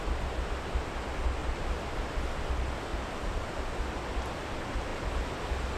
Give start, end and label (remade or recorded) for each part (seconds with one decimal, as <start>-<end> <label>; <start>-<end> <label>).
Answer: 0.0-2.9 recorded; 2.9-3.5 remade; 3.5-5.8 recorded